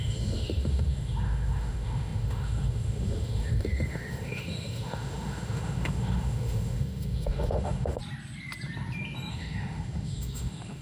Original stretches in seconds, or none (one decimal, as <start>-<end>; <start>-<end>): 8.0-9.3